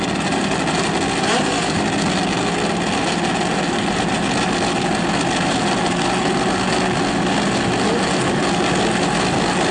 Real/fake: real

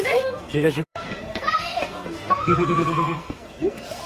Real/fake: fake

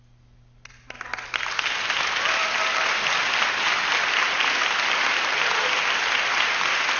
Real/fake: real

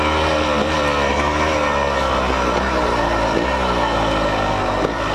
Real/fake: real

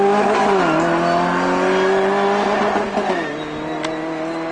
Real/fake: real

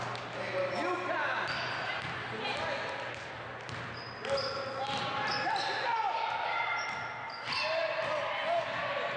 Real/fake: real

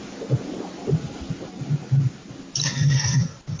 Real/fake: real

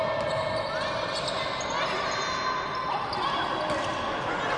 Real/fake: real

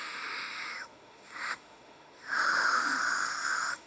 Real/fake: fake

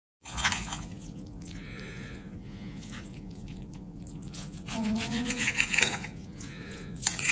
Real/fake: fake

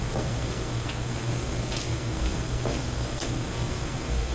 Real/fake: fake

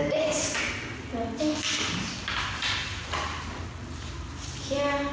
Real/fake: real